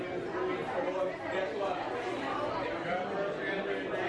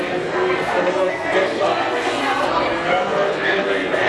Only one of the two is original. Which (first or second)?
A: first